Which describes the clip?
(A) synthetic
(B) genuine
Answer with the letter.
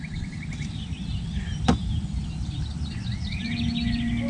B